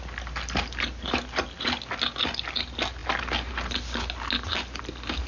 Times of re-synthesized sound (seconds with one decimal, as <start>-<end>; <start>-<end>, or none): none